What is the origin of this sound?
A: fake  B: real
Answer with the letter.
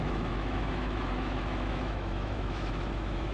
A